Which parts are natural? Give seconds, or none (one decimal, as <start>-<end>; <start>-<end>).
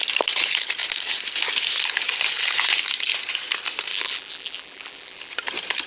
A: 0.0-3.9; 5.3-5.9